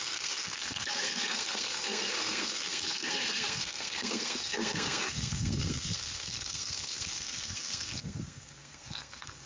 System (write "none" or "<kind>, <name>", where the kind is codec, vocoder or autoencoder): codec, SNAC